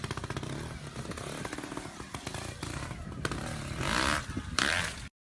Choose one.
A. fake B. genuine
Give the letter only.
B